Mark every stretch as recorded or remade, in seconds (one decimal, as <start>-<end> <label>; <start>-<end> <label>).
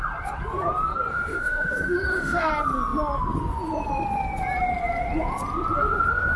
0.0-1.1 recorded; 1.1-2.5 remade; 2.5-6.4 recorded